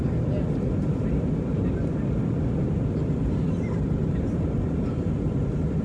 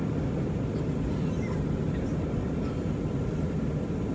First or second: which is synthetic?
first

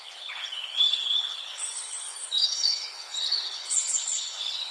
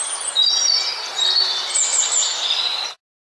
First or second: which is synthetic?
first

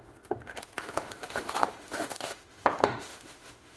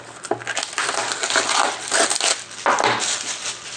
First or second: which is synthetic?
first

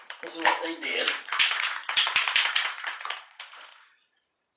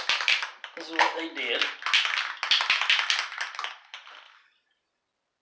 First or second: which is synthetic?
first